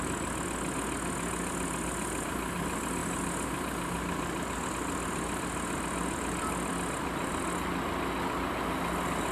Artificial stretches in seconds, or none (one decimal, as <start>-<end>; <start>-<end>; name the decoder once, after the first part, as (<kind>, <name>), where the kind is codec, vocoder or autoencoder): none